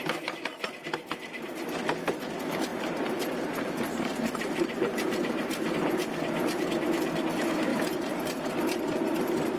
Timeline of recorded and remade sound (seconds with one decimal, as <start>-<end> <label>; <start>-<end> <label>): 0.0-2.7 recorded; 2.7-5.7 remade; 5.7-7.7 recorded; 7.7-8.5 remade; 8.5-9.6 recorded